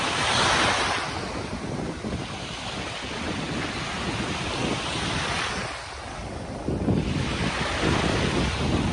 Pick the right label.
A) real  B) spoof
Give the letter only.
A